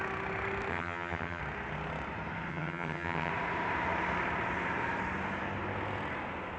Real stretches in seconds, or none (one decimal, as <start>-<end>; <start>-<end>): 0.0-0.7; 1.4-2.5; 3.3-6.6